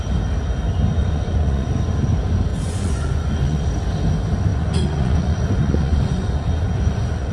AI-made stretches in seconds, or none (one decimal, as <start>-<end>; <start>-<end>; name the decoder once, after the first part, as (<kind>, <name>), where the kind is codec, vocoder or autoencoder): 1.0-1.7 (vocoder, Vocos); 2.5-3.7; 4.5-7.3